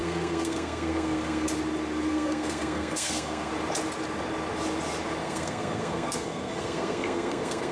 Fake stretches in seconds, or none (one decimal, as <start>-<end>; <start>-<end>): 0.0-1.5; 2.1-3.5; 5.2-7.7